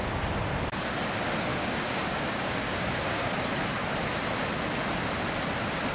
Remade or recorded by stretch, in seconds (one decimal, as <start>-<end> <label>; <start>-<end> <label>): 0.0-1.5 recorded; 1.5-3.3 remade; 3.3-5.9 recorded